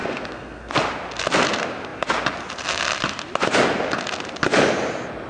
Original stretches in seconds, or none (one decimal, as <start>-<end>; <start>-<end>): 0.7-5.3